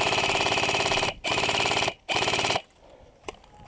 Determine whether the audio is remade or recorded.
recorded